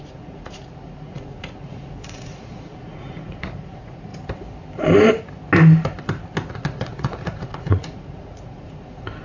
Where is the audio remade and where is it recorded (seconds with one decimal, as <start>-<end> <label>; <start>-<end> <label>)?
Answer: 0.0-4.1 remade; 4.1-6.5 recorded; 6.5-9.2 remade

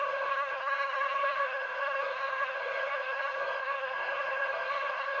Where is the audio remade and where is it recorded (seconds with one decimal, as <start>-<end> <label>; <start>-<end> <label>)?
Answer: 0.0-5.2 remade

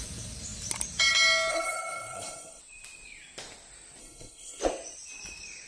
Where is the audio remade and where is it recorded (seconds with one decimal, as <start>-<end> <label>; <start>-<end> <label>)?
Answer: 0.0-1.5 recorded; 1.5-2.6 remade; 2.6-4.0 recorded; 4.0-4.6 remade; 4.6-5.7 recorded